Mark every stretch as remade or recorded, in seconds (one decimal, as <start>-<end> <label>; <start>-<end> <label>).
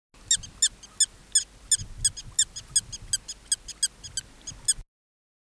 0.0-5.4 recorded